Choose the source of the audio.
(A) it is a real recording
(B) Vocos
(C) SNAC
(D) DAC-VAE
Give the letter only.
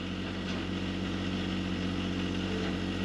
A